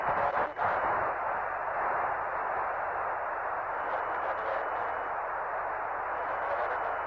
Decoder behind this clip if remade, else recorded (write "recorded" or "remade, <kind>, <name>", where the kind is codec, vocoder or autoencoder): recorded